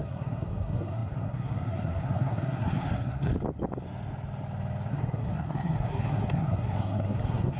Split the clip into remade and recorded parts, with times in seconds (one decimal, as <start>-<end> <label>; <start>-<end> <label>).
0.0-3.3 remade; 3.3-4.9 recorded; 4.9-7.6 remade